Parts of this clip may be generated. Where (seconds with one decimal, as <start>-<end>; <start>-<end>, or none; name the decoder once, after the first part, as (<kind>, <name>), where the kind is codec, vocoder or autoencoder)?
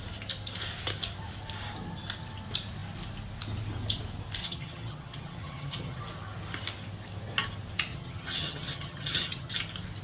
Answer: 4.4-6.0 (vocoder, HiFi-GAN); 7.9-9.5